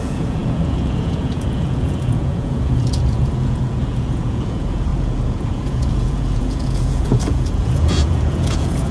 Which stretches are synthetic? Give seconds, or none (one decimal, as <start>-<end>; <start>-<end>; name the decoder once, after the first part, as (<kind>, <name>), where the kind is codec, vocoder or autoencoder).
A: 0.0-8.9 (vocoder, Vocos)